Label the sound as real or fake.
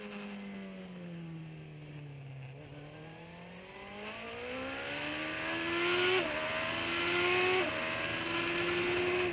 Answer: real